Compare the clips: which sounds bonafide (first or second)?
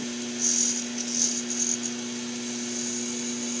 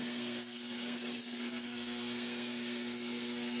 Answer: first